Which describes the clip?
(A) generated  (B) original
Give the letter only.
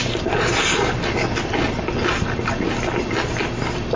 B